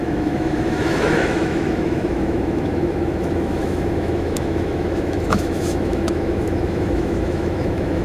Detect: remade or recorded remade